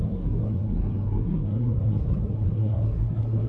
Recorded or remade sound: remade